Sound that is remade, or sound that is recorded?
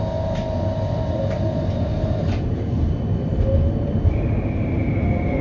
recorded